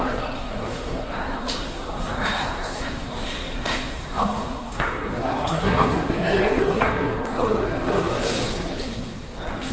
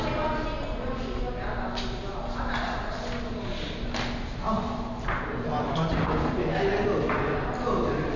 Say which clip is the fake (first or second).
first